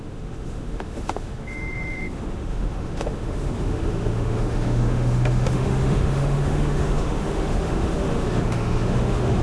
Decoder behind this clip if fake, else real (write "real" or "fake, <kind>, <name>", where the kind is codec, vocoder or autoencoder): fake, autoencoder, DAC-VAE